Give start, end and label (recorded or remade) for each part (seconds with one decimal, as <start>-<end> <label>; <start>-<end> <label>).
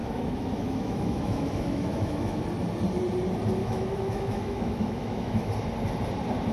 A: 0.0-2.4 remade; 2.4-3.6 recorded; 3.6-5.5 remade; 5.5-6.5 recorded